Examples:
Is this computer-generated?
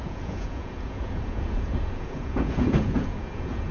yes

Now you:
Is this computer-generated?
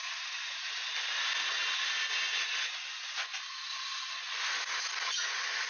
no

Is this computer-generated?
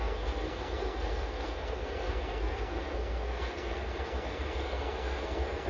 yes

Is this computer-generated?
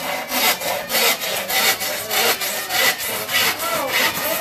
no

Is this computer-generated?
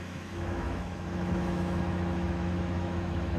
yes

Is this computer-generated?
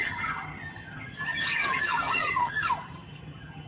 yes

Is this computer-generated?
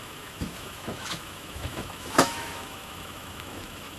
yes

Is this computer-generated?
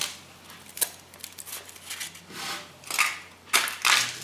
no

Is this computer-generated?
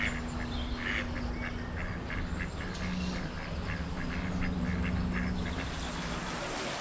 no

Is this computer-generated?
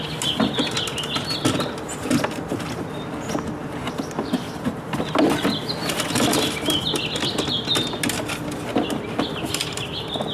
no